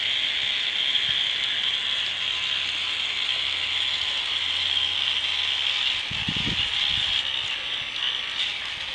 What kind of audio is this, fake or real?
real